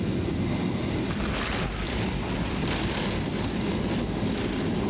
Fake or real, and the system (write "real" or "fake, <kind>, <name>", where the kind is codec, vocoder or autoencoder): real